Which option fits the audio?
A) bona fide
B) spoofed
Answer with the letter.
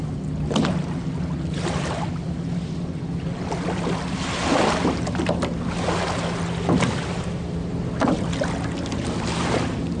A